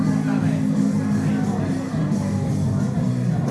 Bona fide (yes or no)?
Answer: yes